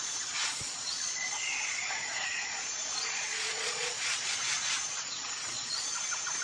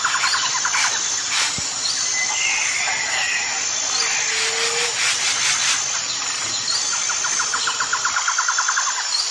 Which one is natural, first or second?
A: second